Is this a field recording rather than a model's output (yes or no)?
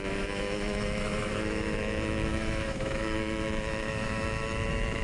no